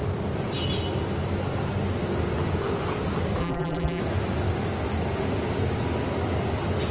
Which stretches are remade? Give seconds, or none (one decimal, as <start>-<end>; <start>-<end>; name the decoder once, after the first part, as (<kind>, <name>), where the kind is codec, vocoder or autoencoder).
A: 3.4-4.0 (vocoder, BigVGAN v2)

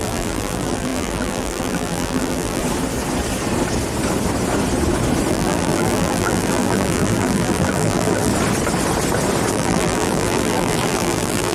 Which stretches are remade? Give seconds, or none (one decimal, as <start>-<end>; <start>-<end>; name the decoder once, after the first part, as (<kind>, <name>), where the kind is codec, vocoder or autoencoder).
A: 0.0-2.6 (vocoder, BigVGAN v2); 5.3-8.3; 9.5-11.5